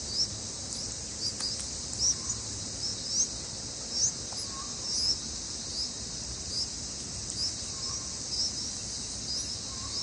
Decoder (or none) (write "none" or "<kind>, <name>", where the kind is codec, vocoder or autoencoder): none